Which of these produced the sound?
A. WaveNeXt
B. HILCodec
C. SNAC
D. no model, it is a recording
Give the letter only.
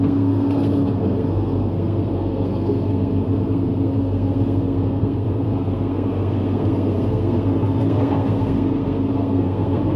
C